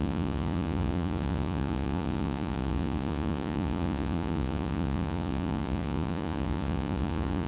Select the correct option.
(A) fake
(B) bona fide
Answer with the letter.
A